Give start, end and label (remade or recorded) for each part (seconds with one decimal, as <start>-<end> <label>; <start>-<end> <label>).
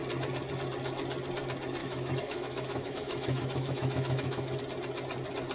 0.0-1.8 recorded; 1.8-4.6 remade; 4.6-5.5 recorded